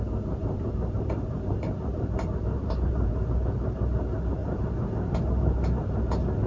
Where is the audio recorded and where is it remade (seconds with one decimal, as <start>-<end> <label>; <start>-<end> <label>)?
0.0-0.4 recorded; 0.4-3.1 remade; 3.1-4.4 recorded; 4.4-5.1 remade; 5.1-6.5 recorded